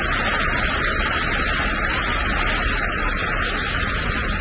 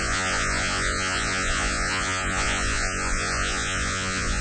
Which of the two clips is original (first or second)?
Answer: first